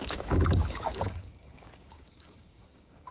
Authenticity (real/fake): fake